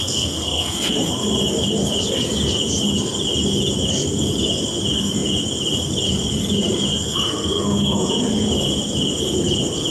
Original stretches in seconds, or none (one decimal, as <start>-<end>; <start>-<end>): 1.1-6.9; 8.1-9.9